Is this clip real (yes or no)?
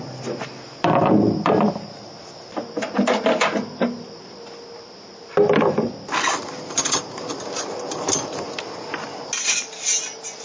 yes